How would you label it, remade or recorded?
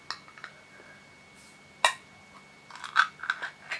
recorded